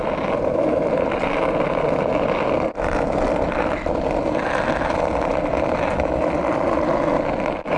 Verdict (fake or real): real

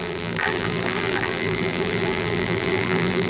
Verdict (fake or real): fake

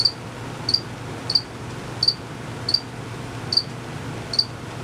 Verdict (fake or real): real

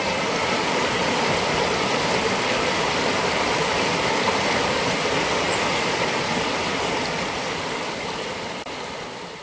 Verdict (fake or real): real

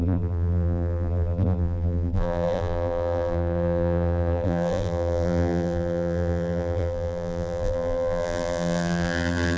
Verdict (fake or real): fake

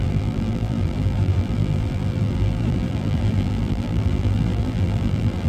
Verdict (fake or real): fake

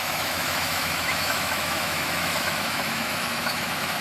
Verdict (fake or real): fake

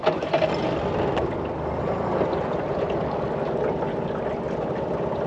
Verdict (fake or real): real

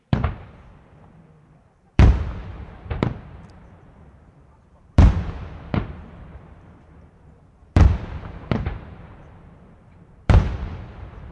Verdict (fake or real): fake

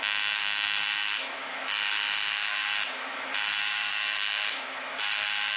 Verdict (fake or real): fake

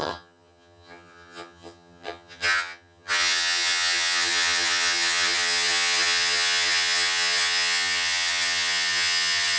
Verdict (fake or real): fake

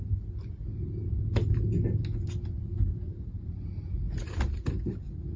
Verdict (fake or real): real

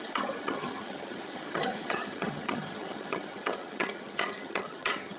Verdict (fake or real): fake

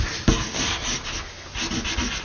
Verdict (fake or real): real